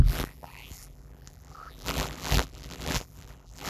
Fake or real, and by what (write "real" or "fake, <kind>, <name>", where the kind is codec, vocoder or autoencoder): fake, vocoder, BigVGAN v2